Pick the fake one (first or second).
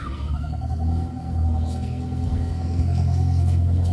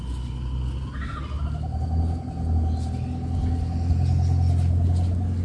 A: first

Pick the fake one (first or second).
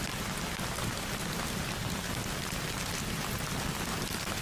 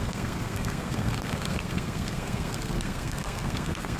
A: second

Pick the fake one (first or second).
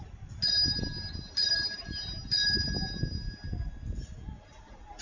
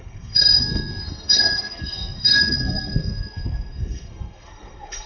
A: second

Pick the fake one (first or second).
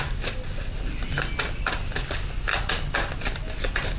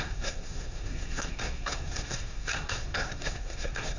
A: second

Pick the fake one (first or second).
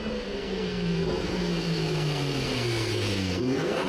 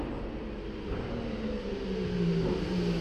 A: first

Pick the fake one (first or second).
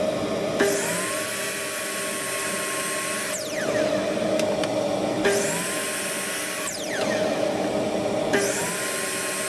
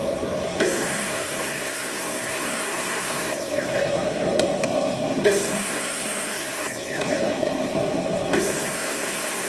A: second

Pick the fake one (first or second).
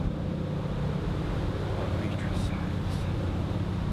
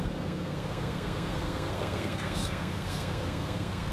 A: second